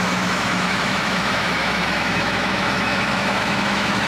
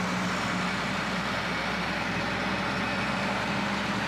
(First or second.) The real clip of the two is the second